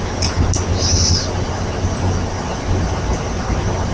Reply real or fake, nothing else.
real